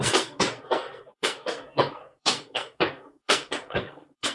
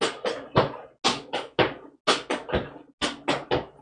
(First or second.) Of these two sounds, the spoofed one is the first